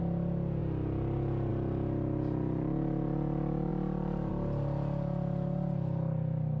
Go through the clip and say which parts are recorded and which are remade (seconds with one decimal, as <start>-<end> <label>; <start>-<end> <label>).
0.0-6.6 recorded

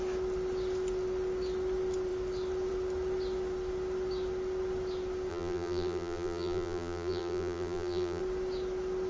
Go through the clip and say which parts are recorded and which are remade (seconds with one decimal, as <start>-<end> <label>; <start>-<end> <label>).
0.0-5.3 recorded; 5.3-8.2 remade; 8.2-9.1 recorded

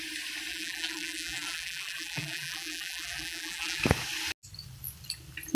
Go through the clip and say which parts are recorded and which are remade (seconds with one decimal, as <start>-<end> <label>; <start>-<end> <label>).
0.0-0.5 recorded; 0.5-3.8 remade; 3.8-5.5 recorded

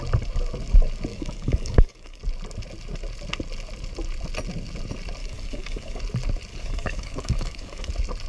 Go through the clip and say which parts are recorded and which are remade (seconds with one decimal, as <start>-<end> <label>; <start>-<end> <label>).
0.0-1.1 recorded; 1.1-2.2 remade; 2.2-5.2 recorded; 5.2-6.0 remade; 6.0-6.5 recorded; 6.5-7.9 remade; 7.9-8.3 recorded

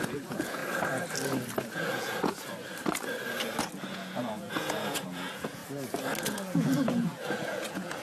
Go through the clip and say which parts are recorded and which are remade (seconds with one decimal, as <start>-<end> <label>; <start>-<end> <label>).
0.0-0.6 remade; 0.6-1.7 recorded; 1.7-2.5 remade; 2.5-3.9 recorded; 3.9-5.6 remade; 5.6-6.2 recorded; 6.2-8.0 remade

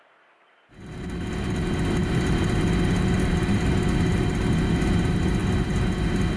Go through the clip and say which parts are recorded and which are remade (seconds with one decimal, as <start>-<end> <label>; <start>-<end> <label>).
0.0-2.0 recorded; 2.0-3.8 remade; 3.8-6.4 recorded